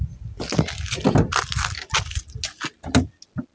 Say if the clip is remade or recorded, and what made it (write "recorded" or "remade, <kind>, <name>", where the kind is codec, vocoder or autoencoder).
recorded